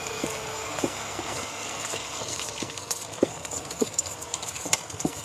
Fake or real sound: fake